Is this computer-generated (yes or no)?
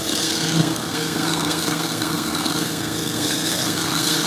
yes